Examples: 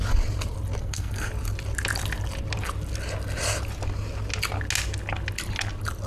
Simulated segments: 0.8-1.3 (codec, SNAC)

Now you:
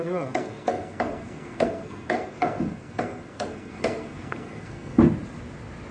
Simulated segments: 0.0-5.0 (codec, SNAC)

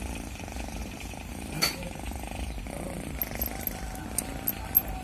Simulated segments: 0.8-2.6 (vocoder, BigVGAN v2)

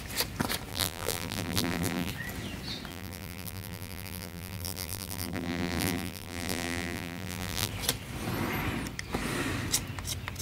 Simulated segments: 0.7-2.1 (vocoder, BigVGAN v2); 2.9-7.7

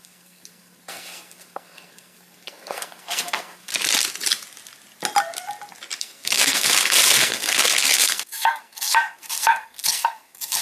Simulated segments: 0.0-3.7 (codec, SNAC); 6.0-10.6